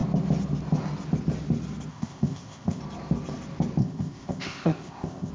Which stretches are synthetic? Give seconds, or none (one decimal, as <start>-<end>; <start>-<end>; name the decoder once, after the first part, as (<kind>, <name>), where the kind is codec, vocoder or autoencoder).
1.9-2.8 (codec, ZipCodec); 3.8-5.3